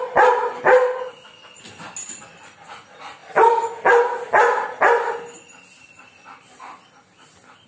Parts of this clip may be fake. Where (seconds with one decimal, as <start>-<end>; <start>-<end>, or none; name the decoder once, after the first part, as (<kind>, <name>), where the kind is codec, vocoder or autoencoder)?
none